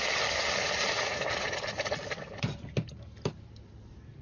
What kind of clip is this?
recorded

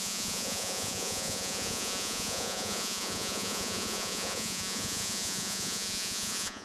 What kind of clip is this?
remade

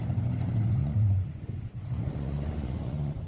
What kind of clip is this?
remade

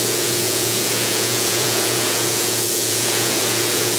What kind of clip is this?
remade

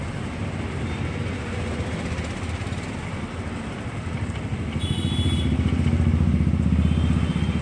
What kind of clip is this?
recorded